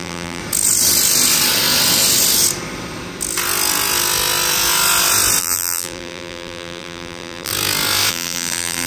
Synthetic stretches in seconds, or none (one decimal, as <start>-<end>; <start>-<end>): 0.0-0.4; 5.4-7.5; 8.1-8.9